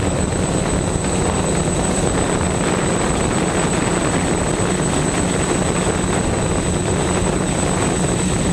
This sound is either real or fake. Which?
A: real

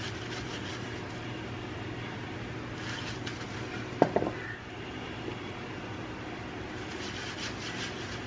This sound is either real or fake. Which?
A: real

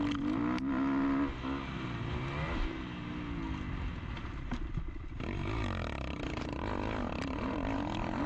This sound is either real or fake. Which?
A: real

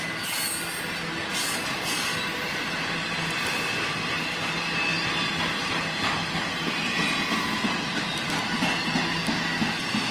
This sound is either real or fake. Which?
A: real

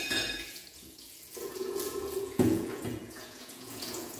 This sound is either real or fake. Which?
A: fake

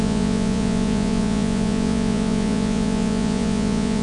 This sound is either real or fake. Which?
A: fake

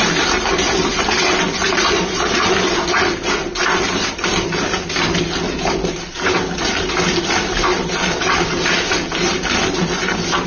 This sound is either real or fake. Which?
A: real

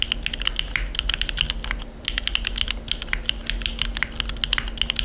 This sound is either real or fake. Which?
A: real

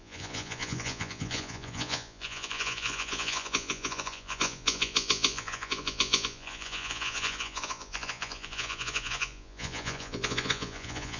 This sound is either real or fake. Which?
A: fake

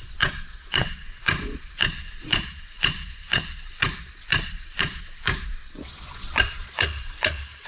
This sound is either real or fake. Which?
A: fake